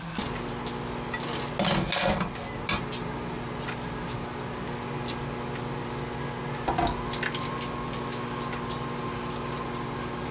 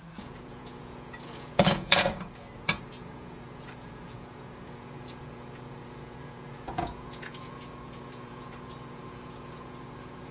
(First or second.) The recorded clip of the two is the first